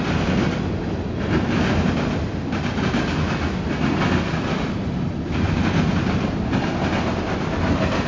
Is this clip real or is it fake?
real